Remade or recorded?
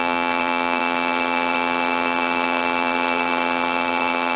remade